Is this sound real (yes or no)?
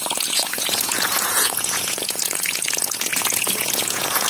no